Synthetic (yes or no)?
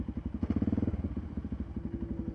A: no